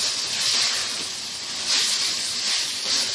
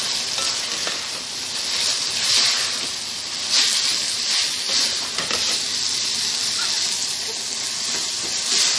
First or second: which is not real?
first